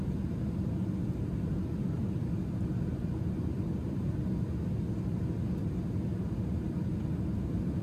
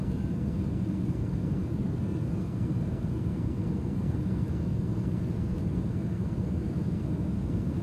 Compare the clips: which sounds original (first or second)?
first